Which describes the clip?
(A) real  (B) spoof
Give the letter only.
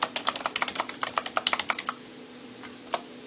A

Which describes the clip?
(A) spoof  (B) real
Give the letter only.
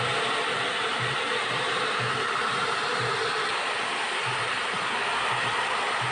B